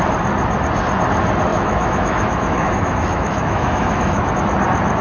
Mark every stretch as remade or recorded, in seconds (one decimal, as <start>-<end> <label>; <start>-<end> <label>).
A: 0.0-1.5 recorded; 1.5-4.3 remade; 4.3-5.0 recorded